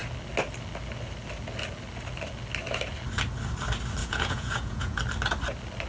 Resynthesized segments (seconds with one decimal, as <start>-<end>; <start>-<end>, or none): 4.0-5.0